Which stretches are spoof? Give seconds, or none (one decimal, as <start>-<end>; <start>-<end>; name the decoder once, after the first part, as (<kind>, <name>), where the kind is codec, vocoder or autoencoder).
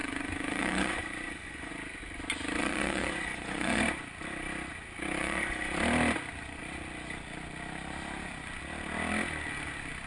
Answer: 0.0-1.7 (vocoder, Vocos); 2.6-3.8; 5.2-5.7